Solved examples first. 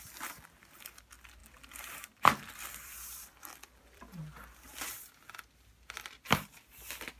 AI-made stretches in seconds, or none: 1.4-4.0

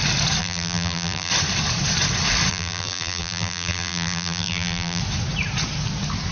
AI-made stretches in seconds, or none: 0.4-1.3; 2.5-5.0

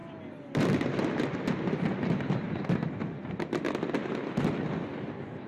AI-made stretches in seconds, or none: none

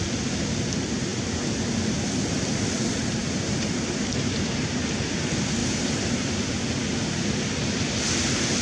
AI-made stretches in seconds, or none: 3.2-4.9; 5.6-6.3

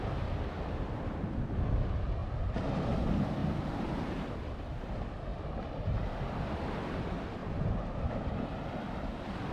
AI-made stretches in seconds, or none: 2.2-3.0; 3.4-4.5; 7.4-8.4

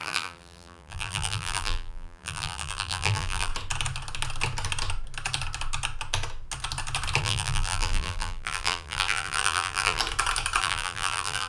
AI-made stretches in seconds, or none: 0.0-3.5; 7.2-10.0; 10.6-11.5

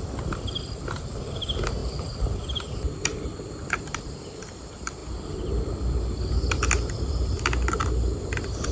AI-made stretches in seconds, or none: 0.0-8.7

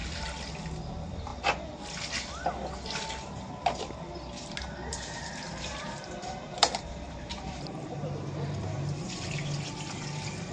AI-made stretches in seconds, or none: 4.9-9.3